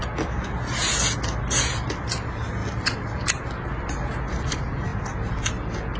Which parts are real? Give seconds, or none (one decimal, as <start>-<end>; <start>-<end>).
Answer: 0.0-6.0